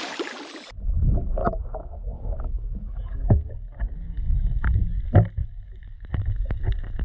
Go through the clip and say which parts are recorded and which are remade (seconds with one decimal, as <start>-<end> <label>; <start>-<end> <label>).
0.0-1.4 recorded; 1.4-5.0 remade; 5.0-5.4 recorded; 5.4-6.6 remade; 6.6-7.0 recorded